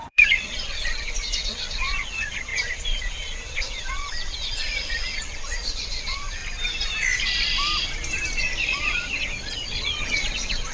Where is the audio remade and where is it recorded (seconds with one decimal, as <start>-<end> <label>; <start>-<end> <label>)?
0.0-6.4 remade; 6.4-8.4 recorded; 8.4-10.7 remade